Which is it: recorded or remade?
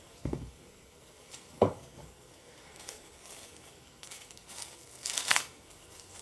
remade